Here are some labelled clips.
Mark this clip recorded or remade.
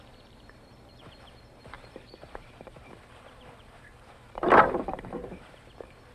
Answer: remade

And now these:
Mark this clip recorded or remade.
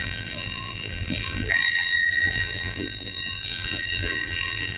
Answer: remade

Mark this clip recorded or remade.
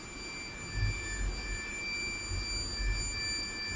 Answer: recorded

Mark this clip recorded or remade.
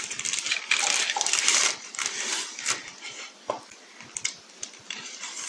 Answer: remade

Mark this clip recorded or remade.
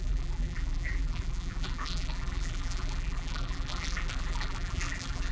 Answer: remade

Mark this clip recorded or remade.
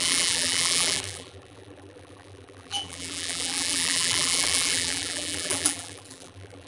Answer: remade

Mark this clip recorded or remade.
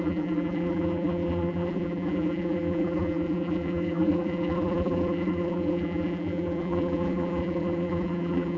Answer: remade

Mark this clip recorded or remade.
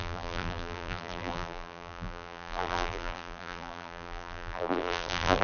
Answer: remade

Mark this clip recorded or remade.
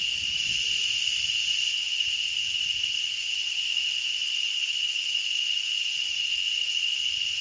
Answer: recorded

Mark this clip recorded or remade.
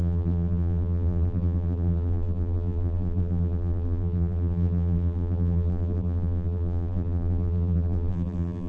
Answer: remade